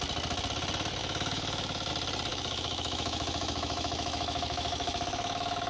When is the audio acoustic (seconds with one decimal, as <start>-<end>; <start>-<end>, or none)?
0.0-1.0; 1.9-2.3

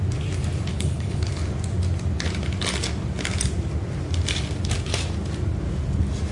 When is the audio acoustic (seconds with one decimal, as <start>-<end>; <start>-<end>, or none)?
0.0-0.7; 1.3-6.3